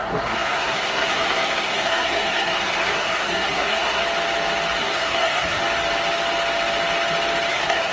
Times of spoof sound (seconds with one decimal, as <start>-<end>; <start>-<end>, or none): 0.0-4.0; 4.8-5.6; 7.5-7.9